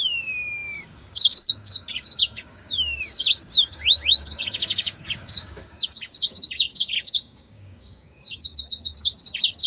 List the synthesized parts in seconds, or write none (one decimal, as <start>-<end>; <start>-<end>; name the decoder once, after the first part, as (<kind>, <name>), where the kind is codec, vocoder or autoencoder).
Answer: 0.0-9.7 (codec, DAC)